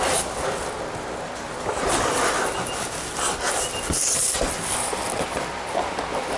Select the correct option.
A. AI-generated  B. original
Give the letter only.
B